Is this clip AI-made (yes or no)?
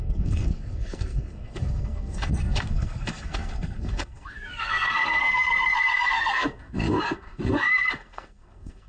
yes